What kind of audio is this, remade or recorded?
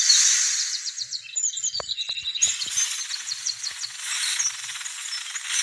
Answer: recorded